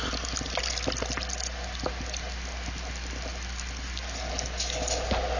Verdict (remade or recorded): recorded